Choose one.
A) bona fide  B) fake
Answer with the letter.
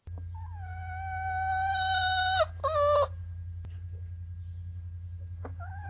A